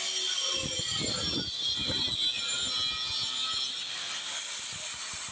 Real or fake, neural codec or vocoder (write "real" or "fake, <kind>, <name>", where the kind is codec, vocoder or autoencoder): real